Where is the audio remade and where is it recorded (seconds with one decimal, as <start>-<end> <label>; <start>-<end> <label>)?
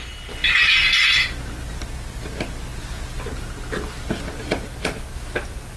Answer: 0.0-5.8 recorded